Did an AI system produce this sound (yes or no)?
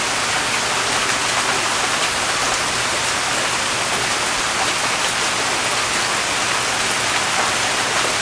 no